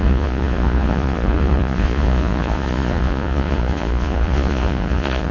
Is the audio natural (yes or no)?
no